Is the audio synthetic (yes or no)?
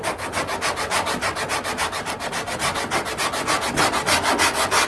no